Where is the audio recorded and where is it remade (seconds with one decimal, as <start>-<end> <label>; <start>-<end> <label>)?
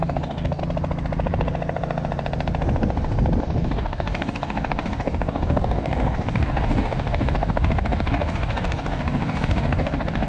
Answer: 0.0-0.6 remade; 0.6-3.4 recorded; 3.4-10.3 remade